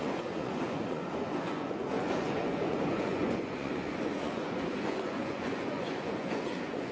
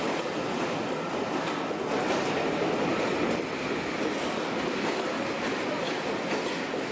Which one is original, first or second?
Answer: second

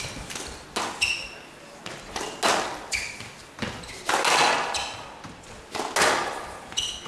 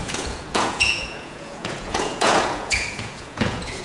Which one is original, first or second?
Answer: first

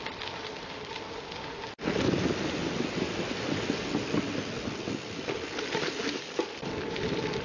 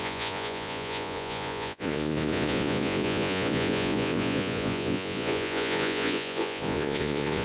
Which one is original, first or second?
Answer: first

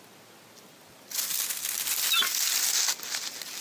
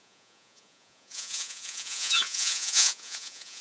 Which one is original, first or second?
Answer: first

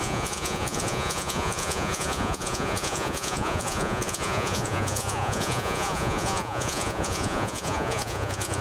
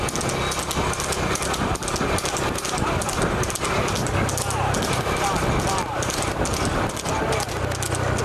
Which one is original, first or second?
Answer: second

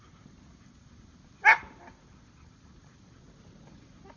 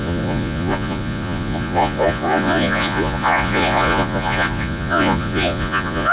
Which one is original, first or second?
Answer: first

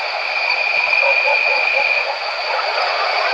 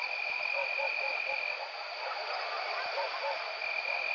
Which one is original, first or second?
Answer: second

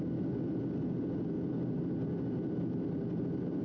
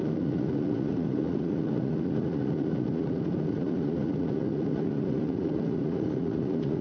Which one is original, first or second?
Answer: first